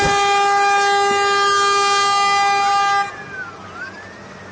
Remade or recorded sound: recorded